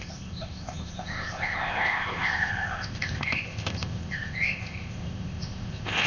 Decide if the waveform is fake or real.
fake